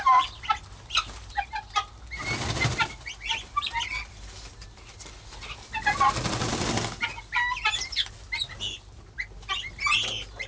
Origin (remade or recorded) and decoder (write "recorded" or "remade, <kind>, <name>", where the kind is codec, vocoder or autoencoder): recorded